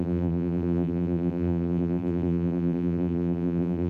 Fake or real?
fake